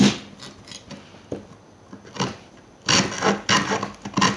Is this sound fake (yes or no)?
no